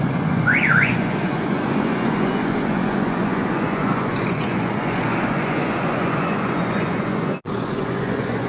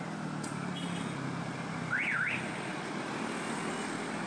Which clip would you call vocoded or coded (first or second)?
first